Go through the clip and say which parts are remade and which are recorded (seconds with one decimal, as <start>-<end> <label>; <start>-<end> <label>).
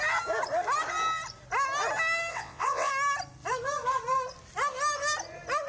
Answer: 0.0-2.3 recorded; 2.3-2.9 remade; 2.9-5.7 recorded